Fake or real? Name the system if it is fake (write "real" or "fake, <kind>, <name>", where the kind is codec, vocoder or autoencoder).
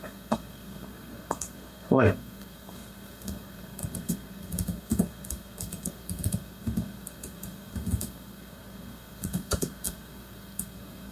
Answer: fake, codec, SNAC